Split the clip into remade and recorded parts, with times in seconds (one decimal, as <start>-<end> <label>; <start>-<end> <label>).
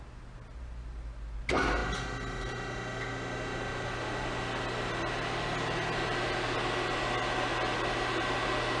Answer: 0.0-8.8 recorded